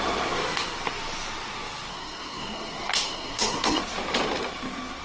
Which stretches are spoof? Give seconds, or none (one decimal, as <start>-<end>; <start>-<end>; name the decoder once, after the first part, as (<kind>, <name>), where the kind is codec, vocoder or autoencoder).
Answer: 1.9-3.8 (codec, SNAC)